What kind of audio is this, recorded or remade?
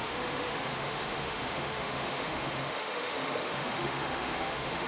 remade